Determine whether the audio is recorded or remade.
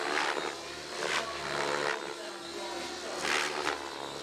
recorded